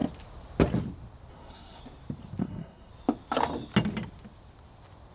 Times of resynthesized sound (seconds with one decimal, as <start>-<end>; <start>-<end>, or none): 1.3-1.8; 2.4-2.9